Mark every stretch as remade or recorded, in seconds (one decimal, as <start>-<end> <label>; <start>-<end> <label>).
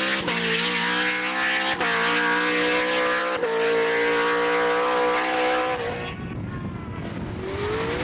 0.0-8.0 recorded